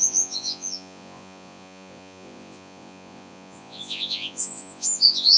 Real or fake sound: fake